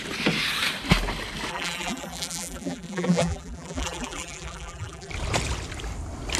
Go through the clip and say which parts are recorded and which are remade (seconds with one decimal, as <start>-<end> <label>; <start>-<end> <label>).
0.0-1.5 recorded; 1.5-5.1 remade; 5.1-6.4 recorded